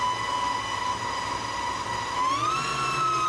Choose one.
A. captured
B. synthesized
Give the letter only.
A